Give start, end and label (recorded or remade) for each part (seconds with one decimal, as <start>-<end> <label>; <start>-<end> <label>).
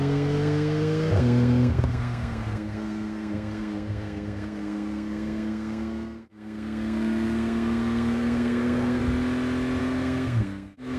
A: 0.0-9.0 remade; 9.0-9.8 recorded; 9.8-11.0 remade